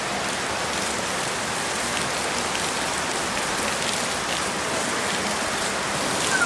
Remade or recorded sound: recorded